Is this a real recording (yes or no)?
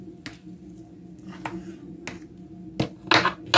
yes